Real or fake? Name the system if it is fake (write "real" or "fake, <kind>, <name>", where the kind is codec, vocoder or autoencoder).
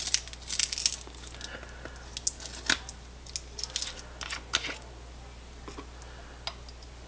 real